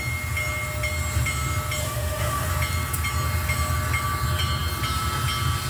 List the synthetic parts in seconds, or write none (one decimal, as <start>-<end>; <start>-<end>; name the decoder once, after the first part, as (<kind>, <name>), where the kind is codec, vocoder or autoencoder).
1.8-2.5 (autoencoder, DAC-VAE)

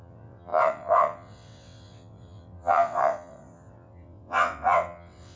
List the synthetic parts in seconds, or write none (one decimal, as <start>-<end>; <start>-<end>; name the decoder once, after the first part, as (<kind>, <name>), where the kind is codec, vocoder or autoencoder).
0.0-5.4 (vocoder, WaveNeXt)